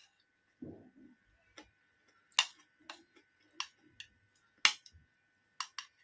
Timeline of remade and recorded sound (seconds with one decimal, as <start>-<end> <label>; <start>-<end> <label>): 0.0-6.0 recorded